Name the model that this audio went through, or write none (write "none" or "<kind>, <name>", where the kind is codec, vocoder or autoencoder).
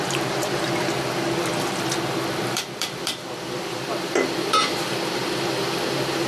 vocoder, BigVGAN v2